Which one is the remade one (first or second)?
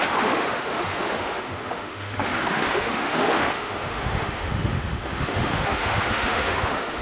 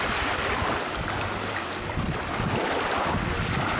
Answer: first